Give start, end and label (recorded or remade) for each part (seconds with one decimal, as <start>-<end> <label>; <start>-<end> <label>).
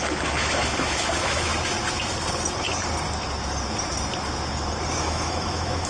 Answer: 0.0-1.5 remade; 1.5-5.0 recorded; 5.0-5.9 remade